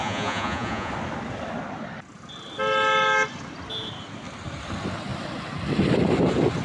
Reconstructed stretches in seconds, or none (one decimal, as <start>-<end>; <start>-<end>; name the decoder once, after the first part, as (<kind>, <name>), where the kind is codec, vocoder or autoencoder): 0.0-0.9 (vocoder, Vocos)